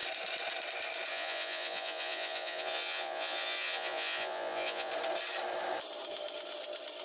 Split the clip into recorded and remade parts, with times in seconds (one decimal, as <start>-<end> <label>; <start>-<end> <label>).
0.0-1.1 recorded; 1.1-4.9 remade; 4.9-7.0 recorded